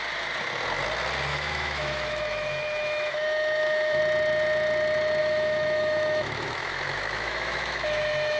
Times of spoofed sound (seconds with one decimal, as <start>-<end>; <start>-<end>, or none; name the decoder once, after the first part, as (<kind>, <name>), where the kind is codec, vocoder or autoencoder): 1.3-4.0 (autoencoder, DAC-VAE); 5.2-8.4